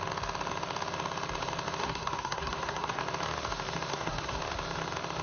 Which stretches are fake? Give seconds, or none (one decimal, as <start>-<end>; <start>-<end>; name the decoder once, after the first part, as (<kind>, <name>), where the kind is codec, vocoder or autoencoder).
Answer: 1.8-3.0 (codec, SNAC); 3.9-4.4